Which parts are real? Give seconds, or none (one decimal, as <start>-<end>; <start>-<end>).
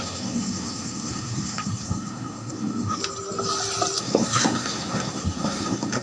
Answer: 3.0-4.0